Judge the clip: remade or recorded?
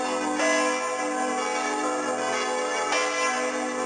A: recorded